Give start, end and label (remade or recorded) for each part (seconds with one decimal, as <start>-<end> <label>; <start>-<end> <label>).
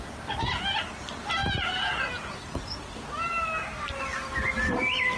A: 0.0-5.2 recorded